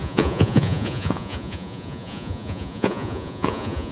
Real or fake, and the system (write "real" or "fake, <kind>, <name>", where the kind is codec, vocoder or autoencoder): fake, vocoder, Vocos